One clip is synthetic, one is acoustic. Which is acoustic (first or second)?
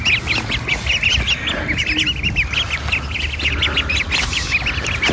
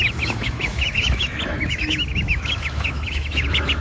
first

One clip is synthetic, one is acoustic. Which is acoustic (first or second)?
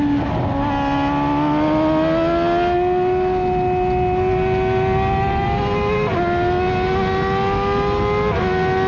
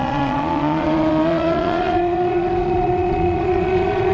first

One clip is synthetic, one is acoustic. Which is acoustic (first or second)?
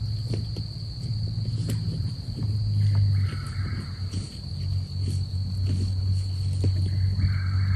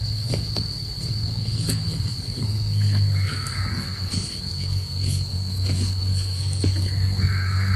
first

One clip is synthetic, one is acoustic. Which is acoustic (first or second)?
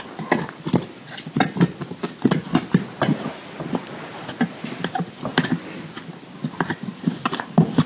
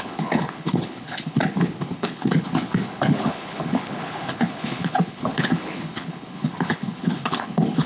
first